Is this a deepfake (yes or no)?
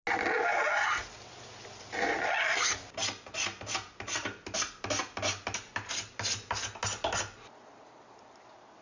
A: no